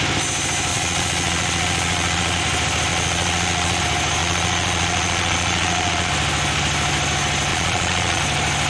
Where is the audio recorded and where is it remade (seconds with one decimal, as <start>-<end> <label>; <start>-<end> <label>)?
0.0-0.7 recorded; 0.7-2.4 remade; 2.4-2.9 recorded; 2.9-3.8 remade; 3.8-4.2 recorded; 4.2-6.1 remade; 6.1-7.5 recorded; 7.5-8.2 remade; 8.2-8.7 recorded